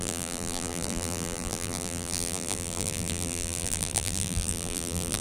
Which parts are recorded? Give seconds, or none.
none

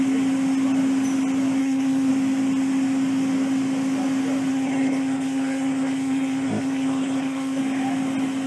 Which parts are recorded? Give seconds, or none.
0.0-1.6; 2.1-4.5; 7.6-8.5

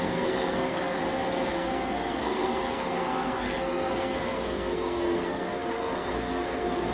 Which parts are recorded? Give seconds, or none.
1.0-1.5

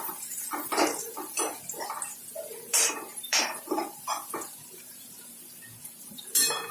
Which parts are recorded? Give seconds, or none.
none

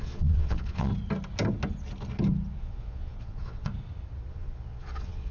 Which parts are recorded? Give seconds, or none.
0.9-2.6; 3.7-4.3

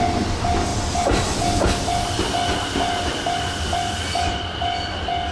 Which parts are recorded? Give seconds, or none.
0.0-5.3

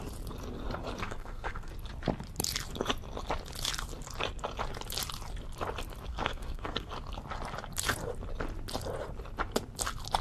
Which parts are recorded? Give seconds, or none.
0.0-1.0; 1.7-6.1; 6.9-10.2